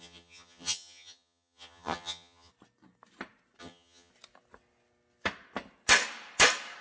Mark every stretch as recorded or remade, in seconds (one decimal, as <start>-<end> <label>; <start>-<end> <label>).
0.0-2.5 remade; 2.5-3.6 recorded; 3.6-4.1 remade; 4.1-6.8 recorded

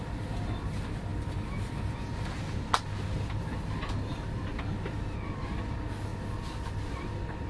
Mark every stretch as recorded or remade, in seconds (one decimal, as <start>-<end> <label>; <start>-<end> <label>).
0.0-7.5 recorded

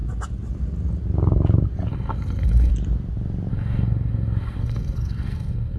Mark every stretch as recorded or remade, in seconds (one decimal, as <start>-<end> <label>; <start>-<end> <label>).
0.0-1.9 recorded; 1.9-2.7 remade; 2.7-3.5 recorded; 3.5-5.8 remade

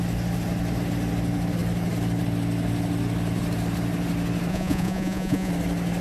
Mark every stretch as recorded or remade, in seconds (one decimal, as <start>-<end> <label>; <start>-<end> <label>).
0.0-4.5 recorded; 4.5-5.5 remade; 5.5-6.0 recorded

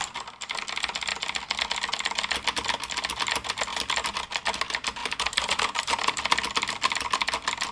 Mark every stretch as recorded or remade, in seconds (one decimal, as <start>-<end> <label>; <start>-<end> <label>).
0.0-5.0 recorded; 5.0-6.2 remade; 6.2-7.7 recorded

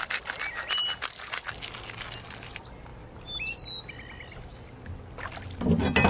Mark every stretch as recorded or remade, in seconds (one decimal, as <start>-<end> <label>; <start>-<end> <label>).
0.0-6.1 recorded